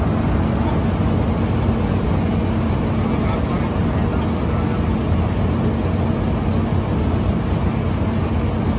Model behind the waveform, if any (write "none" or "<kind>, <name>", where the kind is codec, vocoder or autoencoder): none